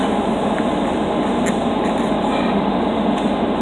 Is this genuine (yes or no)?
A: yes